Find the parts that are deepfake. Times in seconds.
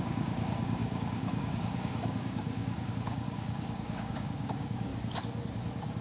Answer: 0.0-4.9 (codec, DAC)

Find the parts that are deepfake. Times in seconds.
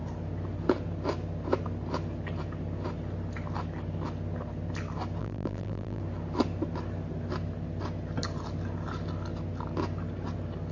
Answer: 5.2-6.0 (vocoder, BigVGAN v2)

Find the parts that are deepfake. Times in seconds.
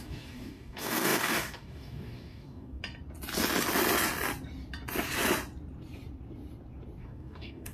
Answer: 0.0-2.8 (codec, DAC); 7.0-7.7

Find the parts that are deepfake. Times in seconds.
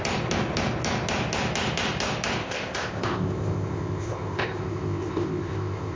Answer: 2.4-6.0 (codec, ZipCodec)